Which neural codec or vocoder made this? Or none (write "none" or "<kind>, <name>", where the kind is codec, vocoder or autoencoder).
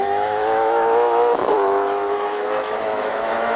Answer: autoencoder, DAC-VAE